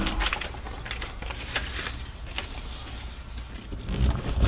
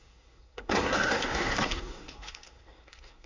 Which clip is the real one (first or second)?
first